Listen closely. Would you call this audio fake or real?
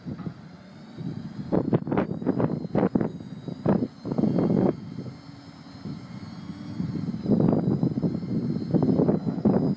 real